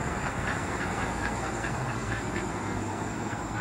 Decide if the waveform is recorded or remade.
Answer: remade